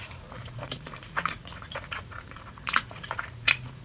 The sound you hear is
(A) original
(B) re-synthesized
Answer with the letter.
B